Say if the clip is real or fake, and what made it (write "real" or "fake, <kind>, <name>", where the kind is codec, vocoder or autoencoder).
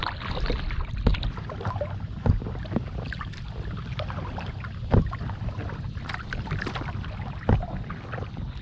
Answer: real